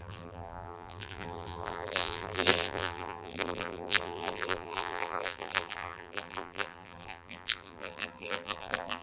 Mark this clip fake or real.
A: fake